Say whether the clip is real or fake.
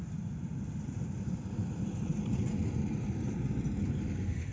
real